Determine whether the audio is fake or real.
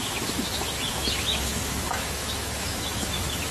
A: fake